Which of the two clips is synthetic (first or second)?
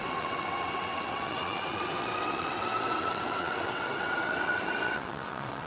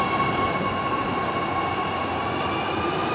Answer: first